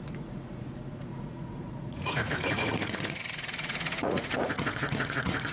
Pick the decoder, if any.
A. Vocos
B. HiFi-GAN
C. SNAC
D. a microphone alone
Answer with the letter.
A